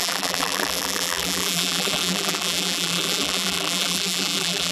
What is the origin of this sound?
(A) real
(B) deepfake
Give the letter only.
B